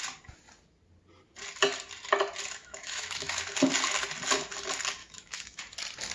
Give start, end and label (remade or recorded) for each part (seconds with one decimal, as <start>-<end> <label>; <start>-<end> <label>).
0.0-2.6 recorded; 2.6-3.4 remade; 3.4-5.0 recorded; 5.0-5.6 remade; 5.6-6.1 recorded